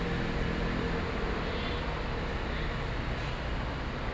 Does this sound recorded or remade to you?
recorded